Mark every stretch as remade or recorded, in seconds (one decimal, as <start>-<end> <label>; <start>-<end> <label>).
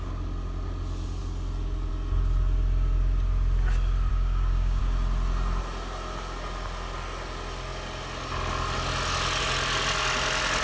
0.0-4.1 recorded; 4.1-4.8 remade; 4.8-10.6 recorded